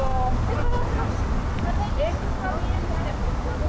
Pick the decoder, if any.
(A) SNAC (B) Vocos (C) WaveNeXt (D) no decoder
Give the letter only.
D